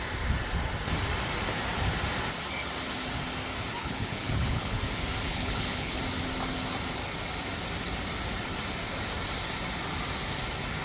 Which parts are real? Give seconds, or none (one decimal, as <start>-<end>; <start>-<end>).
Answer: 0.0-3.8; 4.8-5.3; 6.0-10.8